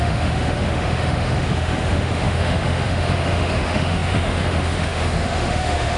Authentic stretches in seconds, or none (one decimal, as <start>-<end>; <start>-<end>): none